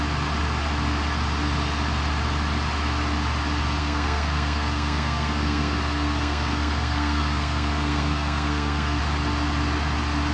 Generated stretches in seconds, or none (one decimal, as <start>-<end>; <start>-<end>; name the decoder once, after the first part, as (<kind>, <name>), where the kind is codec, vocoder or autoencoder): 3.8-9.0 (codec, SNAC)